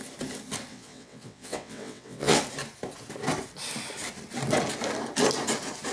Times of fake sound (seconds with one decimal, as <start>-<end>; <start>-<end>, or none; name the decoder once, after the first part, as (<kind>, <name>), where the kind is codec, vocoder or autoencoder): 0.7-2.4 (vocoder, WaveNeXt)